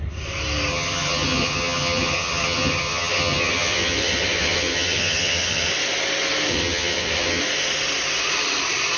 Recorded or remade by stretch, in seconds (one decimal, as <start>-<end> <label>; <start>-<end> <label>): 0.0-0.7 recorded; 0.7-5.7 remade; 5.7-6.5 recorded; 6.5-7.4 remade; 7.4-9.0 recorded